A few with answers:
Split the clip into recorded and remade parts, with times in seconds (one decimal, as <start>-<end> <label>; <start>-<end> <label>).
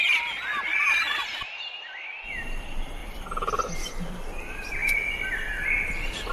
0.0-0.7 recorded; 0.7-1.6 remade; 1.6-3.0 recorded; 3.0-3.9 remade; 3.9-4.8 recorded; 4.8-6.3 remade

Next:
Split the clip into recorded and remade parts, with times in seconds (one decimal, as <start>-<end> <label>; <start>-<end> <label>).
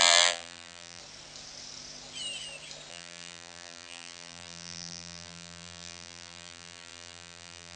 0.0-1.0 remade; 1.0-2.9 recorded; 2.9-7.8 remade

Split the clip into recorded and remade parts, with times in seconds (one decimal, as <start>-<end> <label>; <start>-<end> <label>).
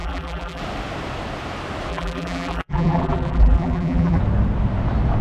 0.0-0.6 remade; 0.6-1.9 recorded; 1.9-4.2 remade; 4.2-5.2 recorded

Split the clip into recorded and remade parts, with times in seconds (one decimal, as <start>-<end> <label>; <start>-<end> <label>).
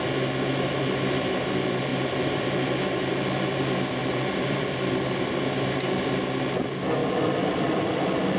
0.0-1.9 recorded; 1.9-2.8 remade; 2.8-4.0 recorded; 4.0-5.3 remade; 5.3-7.0 recorded; 7.0-8.4 remade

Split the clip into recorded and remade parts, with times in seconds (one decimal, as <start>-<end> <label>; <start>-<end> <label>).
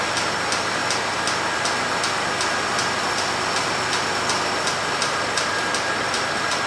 0.0-0.8 remade; 0.8-4.8 recorded; 4.8-6.7 remade